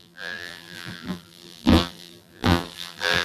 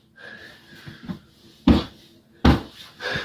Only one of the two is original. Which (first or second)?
second